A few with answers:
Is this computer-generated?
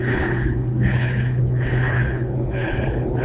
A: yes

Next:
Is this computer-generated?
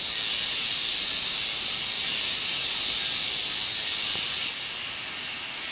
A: no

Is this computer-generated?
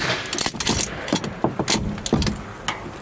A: no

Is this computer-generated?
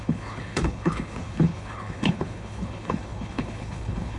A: yes